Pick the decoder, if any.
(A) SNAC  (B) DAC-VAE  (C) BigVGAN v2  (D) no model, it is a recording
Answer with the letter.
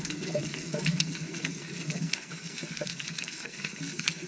A